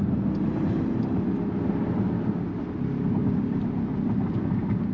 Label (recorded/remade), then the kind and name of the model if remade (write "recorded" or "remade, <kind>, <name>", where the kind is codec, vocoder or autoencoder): recorded